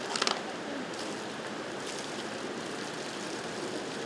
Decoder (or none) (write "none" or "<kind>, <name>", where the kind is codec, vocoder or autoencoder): none